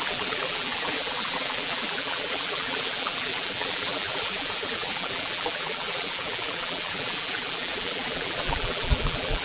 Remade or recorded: remade